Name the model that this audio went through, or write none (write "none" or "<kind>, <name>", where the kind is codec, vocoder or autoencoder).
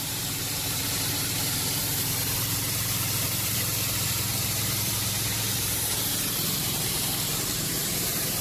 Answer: vocoder, BigVGAN v2